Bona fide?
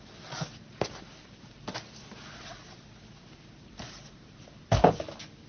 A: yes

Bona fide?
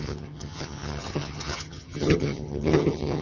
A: no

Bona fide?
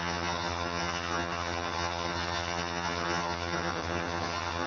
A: no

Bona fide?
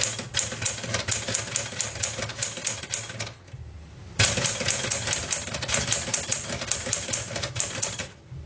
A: yes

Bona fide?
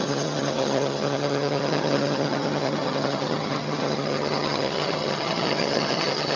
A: no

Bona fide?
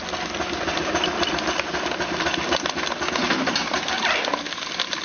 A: yes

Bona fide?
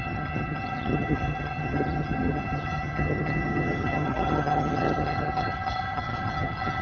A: no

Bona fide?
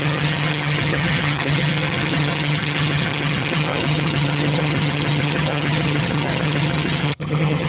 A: no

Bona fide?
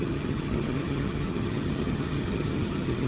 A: no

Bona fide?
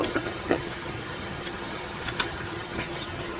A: no